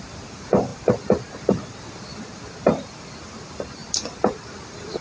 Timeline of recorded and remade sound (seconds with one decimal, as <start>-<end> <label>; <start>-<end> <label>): 0.0-5.0 recorded